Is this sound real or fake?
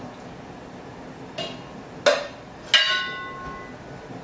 real